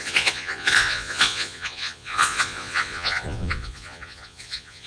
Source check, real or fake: fake